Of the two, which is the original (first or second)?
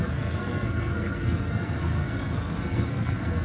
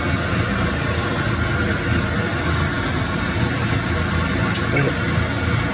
second